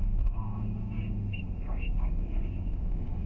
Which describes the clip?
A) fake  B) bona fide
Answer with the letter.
A